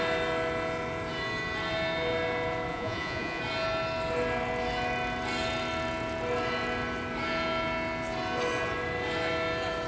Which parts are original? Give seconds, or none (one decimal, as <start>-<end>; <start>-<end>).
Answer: 0.0-2.7; 3.4-9.9